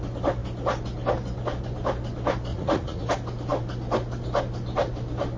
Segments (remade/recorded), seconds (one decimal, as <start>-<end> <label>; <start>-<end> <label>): 0.0-2.5 recorded; 2.5-3.1 remade; 3.1-5.4 recorded

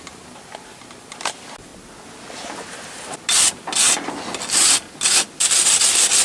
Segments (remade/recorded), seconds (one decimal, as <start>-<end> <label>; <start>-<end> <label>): 0.0-6.2 recorded

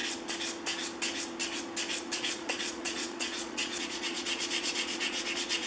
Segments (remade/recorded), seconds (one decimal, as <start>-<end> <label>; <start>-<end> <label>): 0.0-2.1 recorded; 2.1-5.7 remade

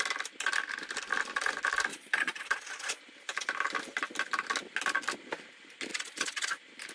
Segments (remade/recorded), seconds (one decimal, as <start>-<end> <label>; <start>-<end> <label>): 0.0-1.9 recorded; 1.9-3.0 remade; 3.0-5.9 recorded; 5.9-6.5 remade; 6.5-6.9 recorded